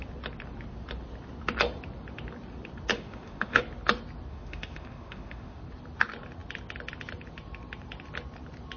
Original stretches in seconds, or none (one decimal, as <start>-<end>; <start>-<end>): 0.0-2.9; 3.6-4.3; 5.6-8.8